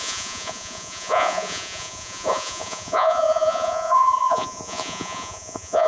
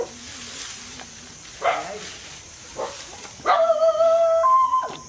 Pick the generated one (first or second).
first